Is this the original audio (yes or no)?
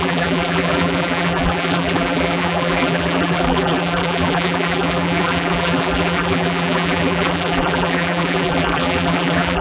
no